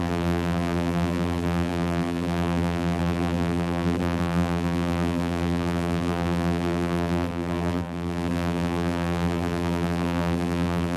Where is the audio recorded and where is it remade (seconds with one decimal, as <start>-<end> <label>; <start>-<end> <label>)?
0.0-11.0 remade